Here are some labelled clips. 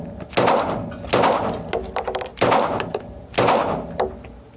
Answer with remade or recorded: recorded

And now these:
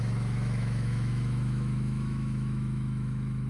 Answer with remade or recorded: remade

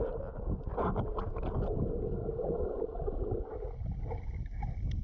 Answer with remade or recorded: recorded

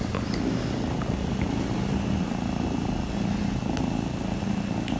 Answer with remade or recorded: recorded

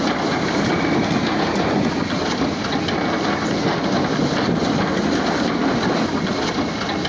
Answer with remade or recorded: recorded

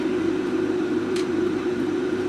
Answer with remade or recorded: remade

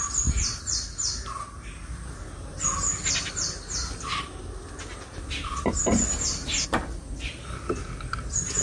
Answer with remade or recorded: recorded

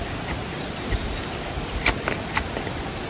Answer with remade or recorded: recorded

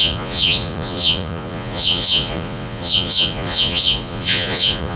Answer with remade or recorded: remade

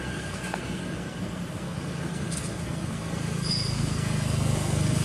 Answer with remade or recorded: remade